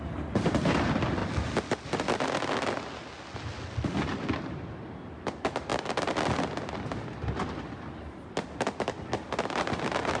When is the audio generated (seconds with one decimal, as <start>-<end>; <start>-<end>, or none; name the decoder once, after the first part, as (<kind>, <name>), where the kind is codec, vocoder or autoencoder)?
none